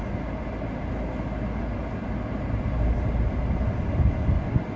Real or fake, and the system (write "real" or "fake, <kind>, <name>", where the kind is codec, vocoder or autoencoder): real